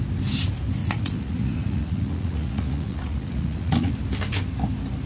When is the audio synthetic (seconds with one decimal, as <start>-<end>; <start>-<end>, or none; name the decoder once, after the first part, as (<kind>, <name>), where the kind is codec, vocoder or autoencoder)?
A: 0.8-3.9 (vocoder, Vocos)